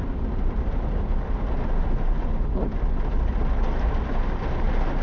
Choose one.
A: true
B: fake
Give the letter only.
B